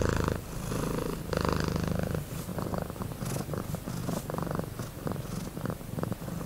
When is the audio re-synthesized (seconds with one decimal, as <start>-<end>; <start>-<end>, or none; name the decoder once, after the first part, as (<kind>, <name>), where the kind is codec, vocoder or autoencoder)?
none